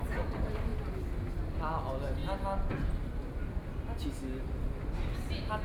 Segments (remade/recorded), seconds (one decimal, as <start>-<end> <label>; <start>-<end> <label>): 0.0-5.6 recorded